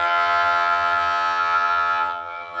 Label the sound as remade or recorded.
remade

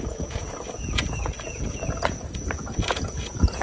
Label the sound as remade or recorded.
remade